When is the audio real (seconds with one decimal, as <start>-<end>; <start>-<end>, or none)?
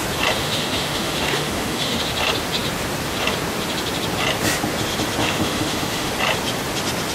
0.0-0.4; 2.0-5.2; 6.1-7.1